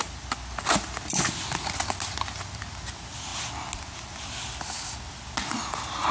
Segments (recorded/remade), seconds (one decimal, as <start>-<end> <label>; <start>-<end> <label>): 0.0-6.1 recorded